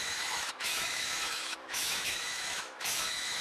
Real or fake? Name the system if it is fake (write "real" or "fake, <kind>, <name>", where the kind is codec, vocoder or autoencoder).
fake, autoencoder, DAC-VAE